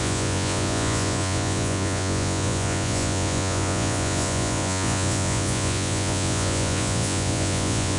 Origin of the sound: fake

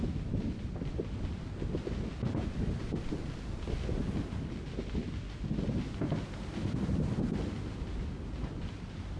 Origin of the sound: real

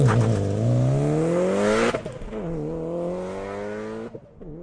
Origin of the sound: real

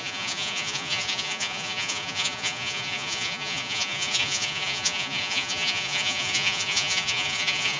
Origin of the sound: fake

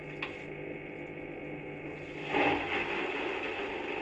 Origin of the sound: real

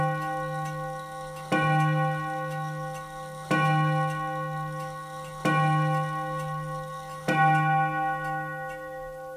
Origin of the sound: real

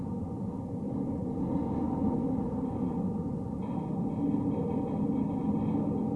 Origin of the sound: real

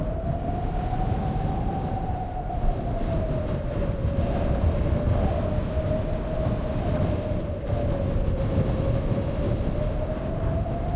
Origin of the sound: real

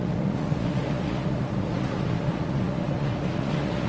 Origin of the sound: fake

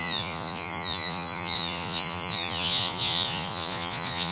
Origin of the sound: fake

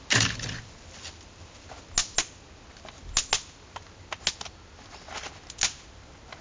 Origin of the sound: real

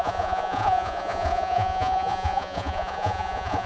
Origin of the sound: fake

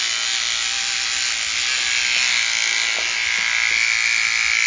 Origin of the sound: real